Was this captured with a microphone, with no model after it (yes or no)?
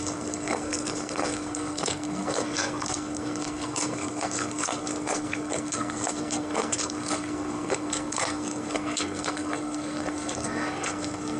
no